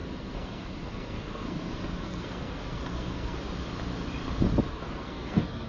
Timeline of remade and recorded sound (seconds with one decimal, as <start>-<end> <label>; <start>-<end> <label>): 0.0-3.4 remade; 3.4-4.7 recorded; 4.7-5.7 remade